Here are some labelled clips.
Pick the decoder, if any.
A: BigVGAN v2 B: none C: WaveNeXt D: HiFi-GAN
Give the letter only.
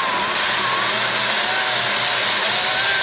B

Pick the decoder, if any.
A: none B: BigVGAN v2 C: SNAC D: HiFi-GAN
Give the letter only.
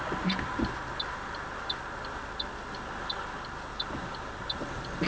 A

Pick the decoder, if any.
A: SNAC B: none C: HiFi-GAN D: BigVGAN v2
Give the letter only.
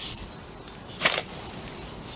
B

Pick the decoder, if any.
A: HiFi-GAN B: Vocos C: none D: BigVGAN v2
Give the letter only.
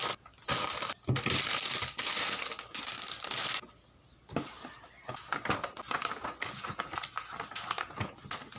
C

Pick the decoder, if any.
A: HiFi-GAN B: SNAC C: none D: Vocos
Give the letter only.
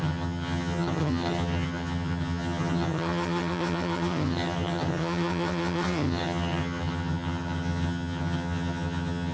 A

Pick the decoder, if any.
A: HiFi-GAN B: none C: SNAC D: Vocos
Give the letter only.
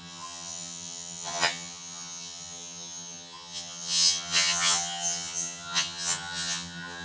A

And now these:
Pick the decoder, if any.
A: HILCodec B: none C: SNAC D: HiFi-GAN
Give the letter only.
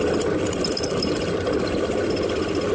B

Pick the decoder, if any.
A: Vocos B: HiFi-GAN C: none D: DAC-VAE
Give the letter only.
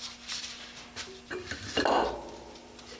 C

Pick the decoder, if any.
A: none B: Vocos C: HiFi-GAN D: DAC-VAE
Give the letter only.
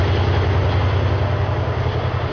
A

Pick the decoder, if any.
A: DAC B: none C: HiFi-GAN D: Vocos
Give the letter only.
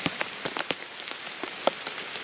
B